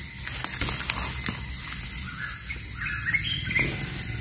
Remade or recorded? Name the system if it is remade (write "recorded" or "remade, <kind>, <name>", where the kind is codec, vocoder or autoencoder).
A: recorded